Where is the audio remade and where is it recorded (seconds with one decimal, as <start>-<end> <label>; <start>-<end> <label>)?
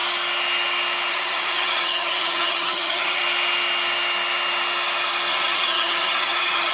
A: 0.0-1.1 recorded; 1.1-3.2 remade; 3.2-5.3 recorded; 5.3-6.7 remade